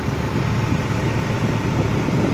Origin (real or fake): real